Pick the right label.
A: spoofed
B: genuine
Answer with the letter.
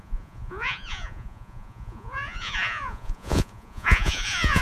A